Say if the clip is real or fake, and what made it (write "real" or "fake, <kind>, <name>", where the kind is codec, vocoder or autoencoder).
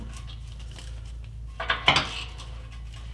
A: real